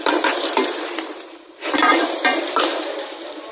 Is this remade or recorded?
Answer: remade